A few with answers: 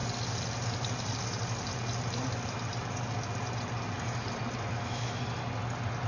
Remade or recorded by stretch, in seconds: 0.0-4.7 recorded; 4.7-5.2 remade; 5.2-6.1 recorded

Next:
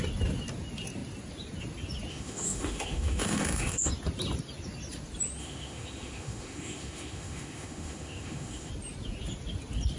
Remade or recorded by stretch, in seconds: 0.0-2.1 recorded; 2.1-3.9 remade; 3.9-5.4 recorded; 5.4-8.7 remade; 8.7-10.0 recorded

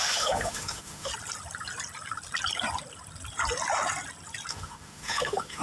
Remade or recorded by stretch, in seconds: 0.0-1.1 remade; 1.1-4.5 recorded; 4.5-5.6 remade